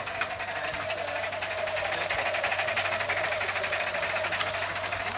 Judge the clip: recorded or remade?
recorded